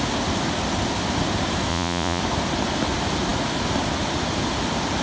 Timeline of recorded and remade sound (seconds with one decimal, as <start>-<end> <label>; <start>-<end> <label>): 0.0-1.7 recorded; 1.7-2.2 remade; 2.2-5.0 recorded